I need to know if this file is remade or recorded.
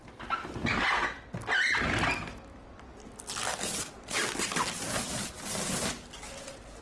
recorded